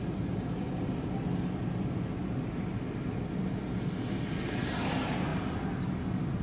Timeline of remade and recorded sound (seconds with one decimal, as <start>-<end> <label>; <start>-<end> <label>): 0.0-6.4 recorded